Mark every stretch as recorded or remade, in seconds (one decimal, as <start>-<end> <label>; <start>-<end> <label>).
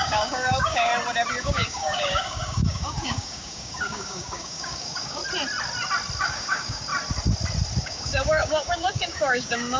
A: 0.0-0.9 remade; 0.9-1.4 recorded; 1.4-5.2 remade; 5.2-6.2 recorded; 6.2-6.9 remade; 6.9-7.8 recorded; 7.8-9.8 remade